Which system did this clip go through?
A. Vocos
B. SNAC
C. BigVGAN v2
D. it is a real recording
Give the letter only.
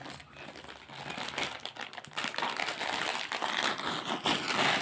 D